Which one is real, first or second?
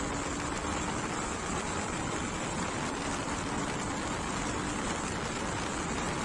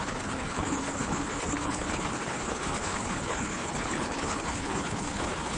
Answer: first